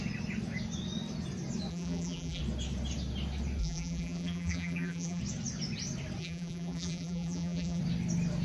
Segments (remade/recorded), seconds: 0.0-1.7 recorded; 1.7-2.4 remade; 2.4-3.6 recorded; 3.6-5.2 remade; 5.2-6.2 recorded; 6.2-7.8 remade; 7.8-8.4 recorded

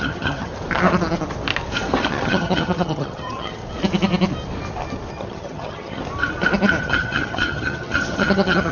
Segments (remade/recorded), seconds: 0.0-0.5 remade; 0.5-2.1 recorded; 2.1-3.6 remade; 3.6-5.1 recorded; 5.1-6.0 remade; 6.0-6.8 recorded; 6.8-8.7 remade

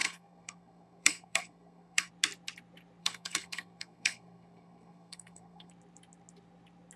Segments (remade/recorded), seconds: 0.0-2.1 remade; 2.1-3.0 recorded; 3.0-5.7 remade; 5.7-7.0 recorded

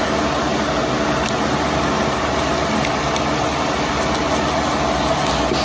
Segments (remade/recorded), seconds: 0.0-5.6 recorded

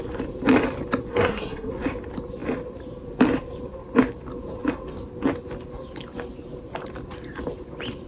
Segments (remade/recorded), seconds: 0.0-1.1 recorded; 1.1-1.7 remade; 1.7-8.1 recorded